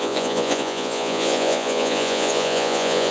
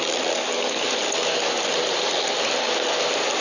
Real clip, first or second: second